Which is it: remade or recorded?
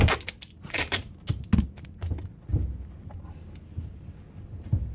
recorded